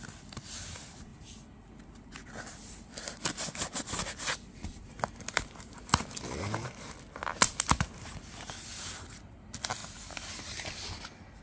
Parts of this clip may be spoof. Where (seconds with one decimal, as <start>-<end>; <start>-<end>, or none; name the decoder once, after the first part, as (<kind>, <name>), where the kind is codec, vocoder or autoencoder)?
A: 1.1-3.8 (vocoder, BigVGAN v2); 9.8-11.0